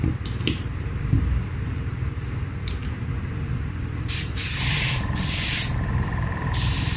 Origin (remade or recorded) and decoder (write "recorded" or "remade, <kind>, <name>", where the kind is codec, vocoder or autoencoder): remade, vocoder, BigVGAN v2